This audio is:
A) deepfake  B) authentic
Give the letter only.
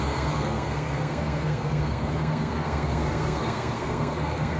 A